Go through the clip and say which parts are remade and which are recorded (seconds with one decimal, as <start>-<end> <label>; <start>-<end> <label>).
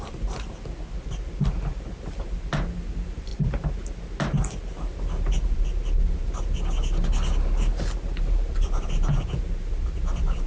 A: 0.0-10.5 recorded